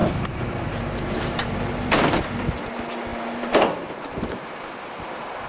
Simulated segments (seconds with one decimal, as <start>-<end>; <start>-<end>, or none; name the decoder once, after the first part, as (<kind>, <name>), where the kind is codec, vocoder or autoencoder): 0.0-2.3 (vocoder, BigVGAN v2); 3.1-4.6